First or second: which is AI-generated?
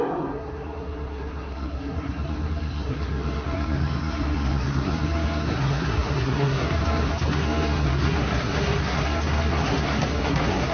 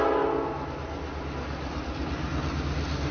first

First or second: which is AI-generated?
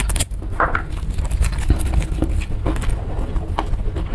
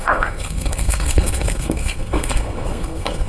second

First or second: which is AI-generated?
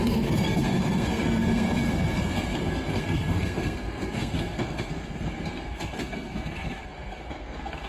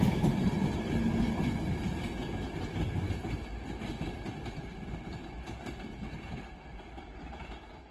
first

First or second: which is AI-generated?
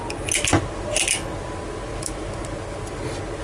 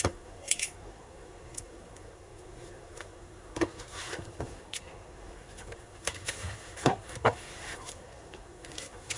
second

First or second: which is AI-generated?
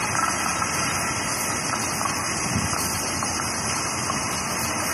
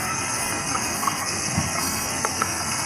second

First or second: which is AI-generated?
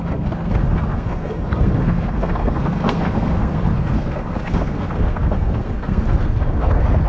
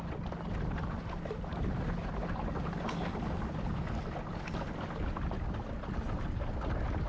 first